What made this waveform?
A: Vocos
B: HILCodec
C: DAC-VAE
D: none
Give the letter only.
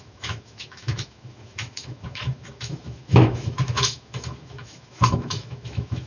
C